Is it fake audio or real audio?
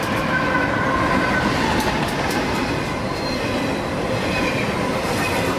real